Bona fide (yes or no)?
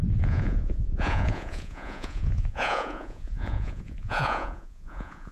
no